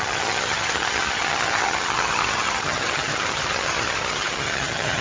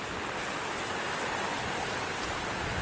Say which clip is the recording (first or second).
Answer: second